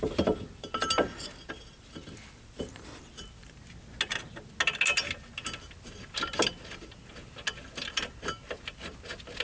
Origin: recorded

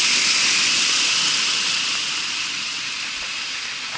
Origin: recorded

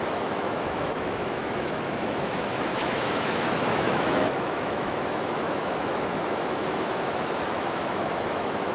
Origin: remade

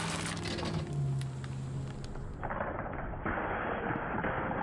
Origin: recorded